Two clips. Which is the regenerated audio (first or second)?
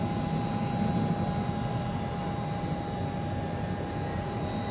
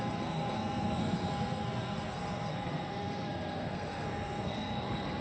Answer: second